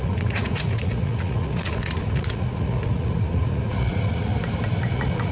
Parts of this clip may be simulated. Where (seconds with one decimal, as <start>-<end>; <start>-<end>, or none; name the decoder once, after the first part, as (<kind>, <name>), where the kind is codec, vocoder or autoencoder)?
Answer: 0.0-4.3 (vocoder, Vocos); 4.8-5.3